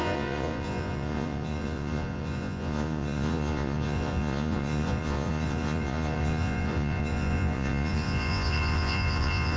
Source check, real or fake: fake